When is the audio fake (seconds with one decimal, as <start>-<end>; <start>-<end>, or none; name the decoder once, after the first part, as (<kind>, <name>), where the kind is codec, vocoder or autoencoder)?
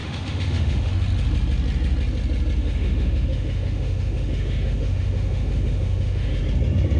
0.0-0.9 (autoencoder, DAC-VAE); 2.6-6.4